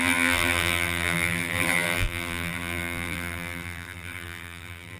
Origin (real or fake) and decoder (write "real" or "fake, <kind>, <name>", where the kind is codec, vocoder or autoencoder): fake, vocoder, BigVGAN v2